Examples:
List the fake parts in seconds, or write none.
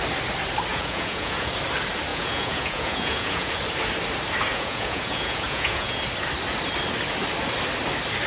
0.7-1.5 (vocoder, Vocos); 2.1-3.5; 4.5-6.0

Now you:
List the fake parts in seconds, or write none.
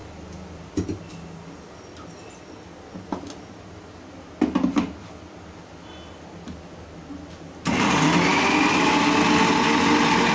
none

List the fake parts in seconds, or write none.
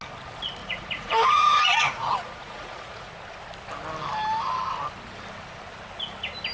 0.6-3.1 (vocoder, Vocos)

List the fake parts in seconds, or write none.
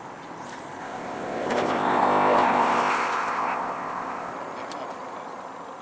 0.8-4.3 (codec, ZipCodec)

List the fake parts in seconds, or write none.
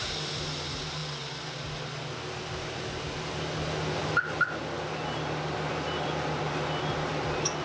none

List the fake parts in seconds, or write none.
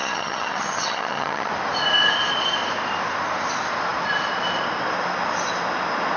0.0-1.5 (vocoder, HiFi-GAN)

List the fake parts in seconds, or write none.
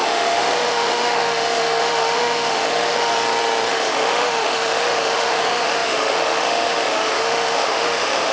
0.0-3.1 (autoencoder, DAC-VAE); 3.7-8.3